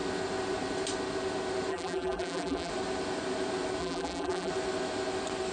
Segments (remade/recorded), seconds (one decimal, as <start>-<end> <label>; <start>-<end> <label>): 0.0-1.7 recorded; 1.7-2.7 remade; 2.7-3.8 recorded; 3.8-4.5 remade; 4.5-5.5 recorded